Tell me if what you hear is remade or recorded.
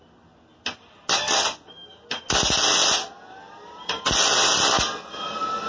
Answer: recorded